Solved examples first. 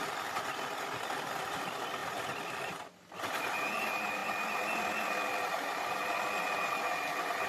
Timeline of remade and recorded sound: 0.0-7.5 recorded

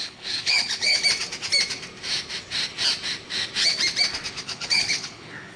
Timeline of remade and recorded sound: 0.0-1.0 remade; 1.0-4.4 recorded; 4.4-5.6 remade

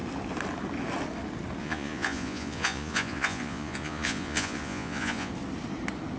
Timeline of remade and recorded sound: 0.0-1.6 recorded; 1.6-5.3 remade; 5.3-6.2 recorded

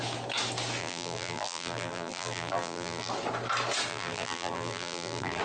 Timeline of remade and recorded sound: 0.0-0.8 recorded; 0.8-3.1 remade; 3.1-3.9 recorded; 3.9-5.4 remade

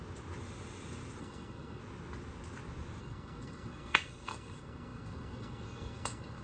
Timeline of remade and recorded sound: 0.0-1.2 recorded; 1.2-1.8 remade; 1.8-3.0 recorded; 3.0-6.4 remade

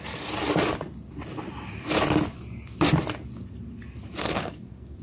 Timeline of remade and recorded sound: 0.0-4.2 recorded; 4.2-5.0 remade

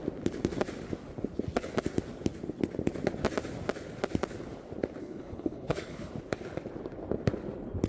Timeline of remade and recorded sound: 0.0-5.0 recorded; 5.0-6.1 remade; 6.1-7.9 recorded

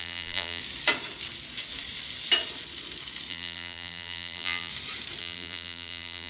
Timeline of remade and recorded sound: 0.0-0.6 remade; 0.6-3.3 recorded; 3.3-4.7 remade; 4.7-5.2 recorded; 5.2-6.3 remade